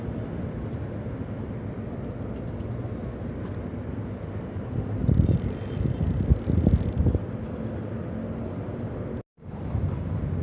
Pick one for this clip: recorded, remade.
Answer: recorded